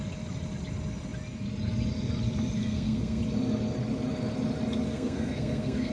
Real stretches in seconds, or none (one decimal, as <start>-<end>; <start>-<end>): 0.0-2.6; 3.2-4.9